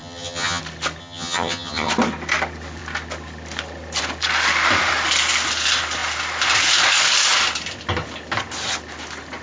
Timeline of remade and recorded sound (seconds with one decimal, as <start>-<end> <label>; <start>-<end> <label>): 0.0-0.6 remade; 0.6-1.0 recorded; 1.0-1.9 remade; 1.9-9.4 recorded